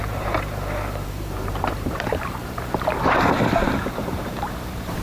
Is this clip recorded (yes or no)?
no